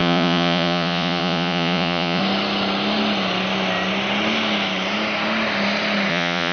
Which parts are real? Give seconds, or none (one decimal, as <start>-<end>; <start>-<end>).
2.2-6.1